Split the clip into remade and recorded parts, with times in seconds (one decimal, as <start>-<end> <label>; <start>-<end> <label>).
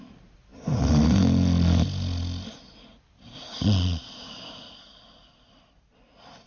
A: 0.0-6.5 recorded